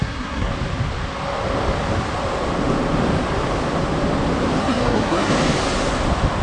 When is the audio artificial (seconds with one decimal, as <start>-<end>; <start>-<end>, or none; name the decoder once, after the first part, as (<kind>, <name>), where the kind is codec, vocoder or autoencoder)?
0.0-0.5 (codec, SNAC); 4.6-5.3

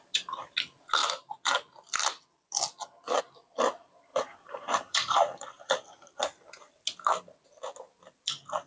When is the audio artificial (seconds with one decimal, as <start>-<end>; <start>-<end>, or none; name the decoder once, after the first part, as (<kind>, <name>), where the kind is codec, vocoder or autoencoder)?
4.1-5.7 (vocoder, BigVGAN v2)